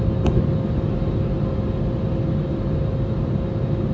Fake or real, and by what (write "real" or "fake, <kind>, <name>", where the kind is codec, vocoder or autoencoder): real